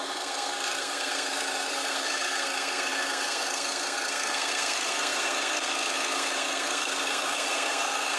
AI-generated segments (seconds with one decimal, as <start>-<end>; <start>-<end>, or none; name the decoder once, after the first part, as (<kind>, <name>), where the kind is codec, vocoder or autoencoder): 0.0-8.2 (codec, SNAC)